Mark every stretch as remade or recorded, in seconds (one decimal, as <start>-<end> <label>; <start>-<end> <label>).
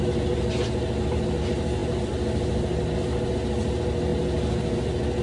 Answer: 0.0-5.2 recorded